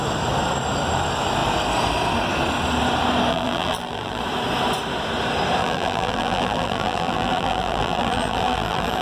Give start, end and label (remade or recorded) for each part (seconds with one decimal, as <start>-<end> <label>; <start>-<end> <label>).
0.0-3.3 recorded; 3.3-4.2 remade; 4.2-5.6 recorded; 5.6-9.0 remade